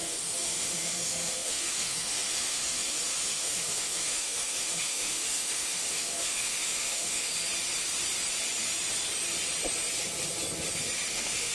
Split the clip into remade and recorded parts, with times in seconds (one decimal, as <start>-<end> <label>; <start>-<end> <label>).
0.0-7.3 remade; 7.3-11.1 recorded; 11.1-11.5 remade